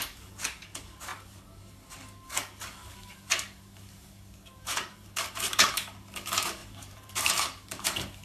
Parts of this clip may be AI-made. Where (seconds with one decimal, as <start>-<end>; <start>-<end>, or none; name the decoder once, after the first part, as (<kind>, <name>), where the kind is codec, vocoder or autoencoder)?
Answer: 0.0-8.2 (codec, DAC)